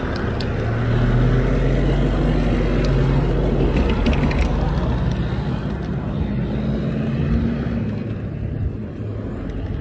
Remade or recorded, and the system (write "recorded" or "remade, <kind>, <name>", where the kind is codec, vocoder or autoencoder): recorded